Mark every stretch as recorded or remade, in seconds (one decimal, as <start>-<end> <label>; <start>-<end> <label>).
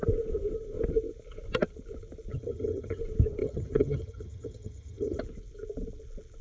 0.0-2.3 recorded; 2.3-3.0 remade; 3.0-3.4 recorded; 3.4-5.2 remade; 5.2-6.4 recorded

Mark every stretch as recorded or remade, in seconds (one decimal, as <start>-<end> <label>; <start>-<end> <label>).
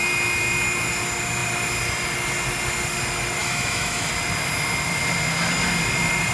0.0-3.4 recorded; 3.4-4.1 remade; 4.1-6.3 recorded